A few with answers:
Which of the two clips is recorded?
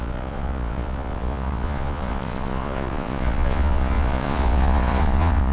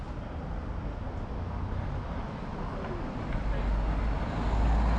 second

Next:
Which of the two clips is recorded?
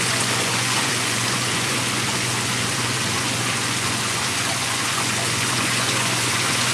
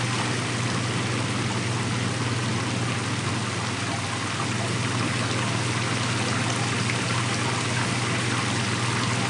second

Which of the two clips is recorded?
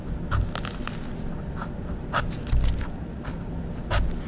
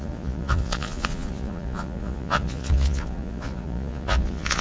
first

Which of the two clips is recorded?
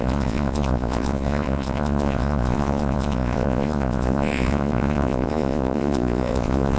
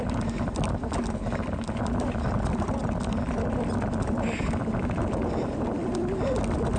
second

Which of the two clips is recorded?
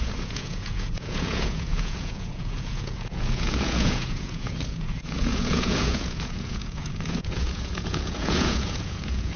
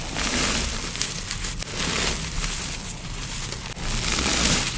second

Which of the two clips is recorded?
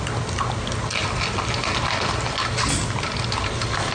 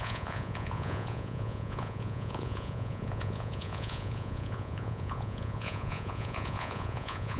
first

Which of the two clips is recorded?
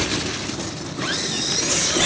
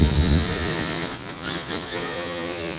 first